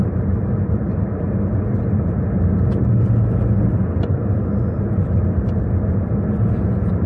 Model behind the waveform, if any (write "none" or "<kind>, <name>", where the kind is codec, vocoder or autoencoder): none